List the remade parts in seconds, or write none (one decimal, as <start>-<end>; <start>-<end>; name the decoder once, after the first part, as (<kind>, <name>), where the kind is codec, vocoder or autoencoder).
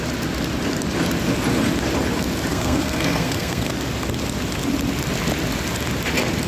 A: 2.5-3.7 (codec, SNAC)